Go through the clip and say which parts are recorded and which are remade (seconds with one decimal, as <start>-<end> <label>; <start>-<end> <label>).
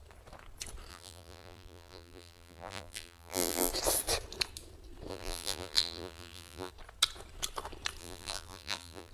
0.0-0.9 recorded; 0.9-3.7 remade; 3.7-5.1 recorded; 5.1-6.7 remade; 6.7-8.0 recorded; 8.0-9.1 remade